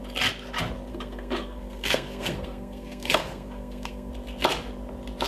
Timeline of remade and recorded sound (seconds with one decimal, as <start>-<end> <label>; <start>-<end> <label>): 0.0-0.9 recorded; 0.9-4.1 remade; 4.1-5.3 recorded